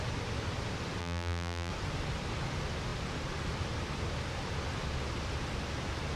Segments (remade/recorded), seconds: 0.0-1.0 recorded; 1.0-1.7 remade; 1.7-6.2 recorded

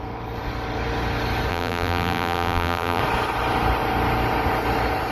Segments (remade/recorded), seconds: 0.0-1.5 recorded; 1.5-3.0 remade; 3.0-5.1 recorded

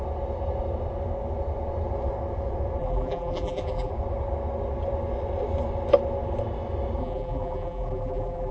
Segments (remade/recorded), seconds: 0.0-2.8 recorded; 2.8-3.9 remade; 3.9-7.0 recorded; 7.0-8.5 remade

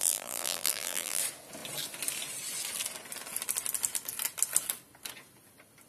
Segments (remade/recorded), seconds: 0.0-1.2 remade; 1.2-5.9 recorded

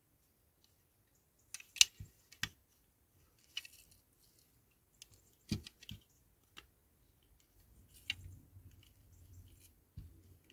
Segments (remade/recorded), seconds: 0.0-10.5 recorded

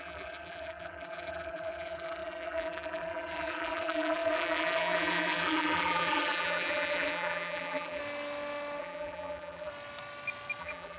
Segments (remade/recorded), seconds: 0.0-8.0 remade; 8.0-8.8 recorded; 8.8-9.7 remade; 9.7-10.6 recorded; 10.6-11.0 remade

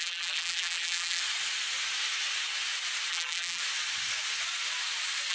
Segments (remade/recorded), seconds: 0.0-1.2 remade; 1.2-3.1 recorded; 3.1-3.6 remade; 3.6-5.3 recorded

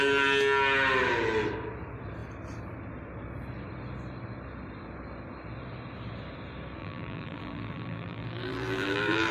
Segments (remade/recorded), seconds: 0.0-6.8 recorded; 6.8-9.3 remade